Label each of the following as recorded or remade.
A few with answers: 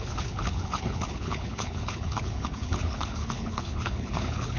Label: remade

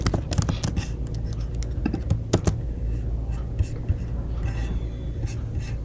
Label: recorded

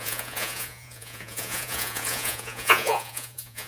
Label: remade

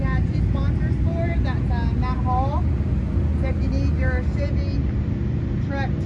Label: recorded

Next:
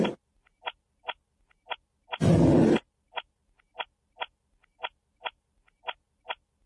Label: recorded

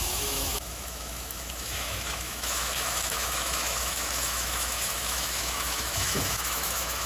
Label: remade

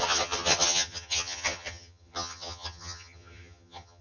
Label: remade